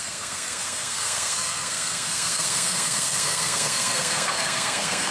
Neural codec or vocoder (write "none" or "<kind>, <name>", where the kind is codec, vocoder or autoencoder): codec, SNAC